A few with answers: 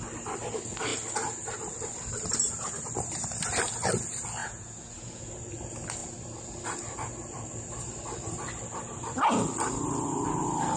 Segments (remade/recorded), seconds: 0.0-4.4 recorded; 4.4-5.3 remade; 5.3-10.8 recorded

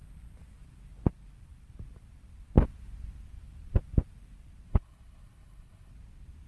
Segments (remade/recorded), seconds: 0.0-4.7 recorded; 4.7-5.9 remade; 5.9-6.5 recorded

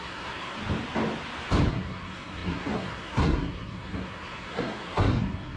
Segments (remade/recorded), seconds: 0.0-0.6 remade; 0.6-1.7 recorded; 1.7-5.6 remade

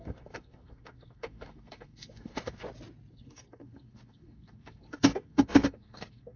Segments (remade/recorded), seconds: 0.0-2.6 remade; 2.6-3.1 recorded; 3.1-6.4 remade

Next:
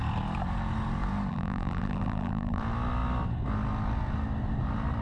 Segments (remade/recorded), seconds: 0.0-1.3 recorded; 1.3-2.6 remade; 2.6-5.0 recorded

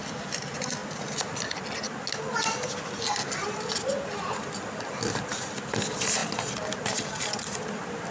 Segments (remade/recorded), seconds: 0.0-8.1 recorded

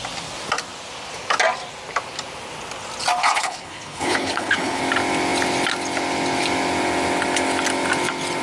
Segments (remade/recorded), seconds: 0.0-3.2 recorded; 3.2-4.8 remade; 4.8-8.4 recorded